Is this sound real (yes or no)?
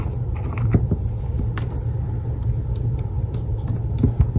yes